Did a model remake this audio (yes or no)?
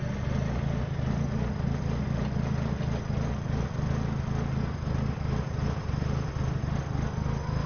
no